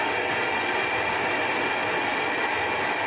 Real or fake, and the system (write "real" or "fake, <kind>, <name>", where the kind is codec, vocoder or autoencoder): real